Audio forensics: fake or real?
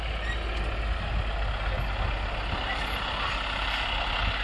real